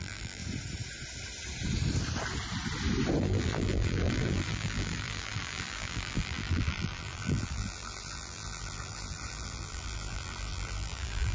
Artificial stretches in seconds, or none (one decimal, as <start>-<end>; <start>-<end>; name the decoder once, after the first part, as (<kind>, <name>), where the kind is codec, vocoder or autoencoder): 0.0-0.4 (vocoder, BigVGAN v2); 3.2-11.3